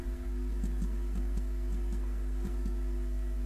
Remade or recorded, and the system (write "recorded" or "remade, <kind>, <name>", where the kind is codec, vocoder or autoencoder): remade, codec, SNAC